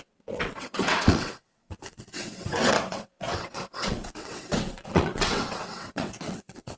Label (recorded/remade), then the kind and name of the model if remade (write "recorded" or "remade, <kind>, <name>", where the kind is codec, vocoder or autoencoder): remade, vocoder, WaveNeXt